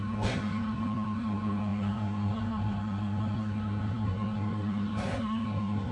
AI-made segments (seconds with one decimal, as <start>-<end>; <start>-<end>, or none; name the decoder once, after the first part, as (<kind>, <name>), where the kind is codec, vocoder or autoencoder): 0.0-5.9 (codec, SNAC)